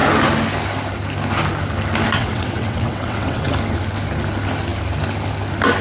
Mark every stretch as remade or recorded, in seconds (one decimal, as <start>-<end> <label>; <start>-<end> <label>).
0.0-2.2 recorded; 2.2-3.5 remade; 3.5-5.8 recorded